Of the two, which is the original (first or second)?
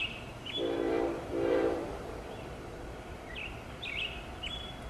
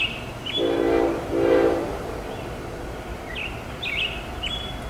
second